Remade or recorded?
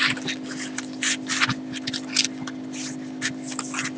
recorded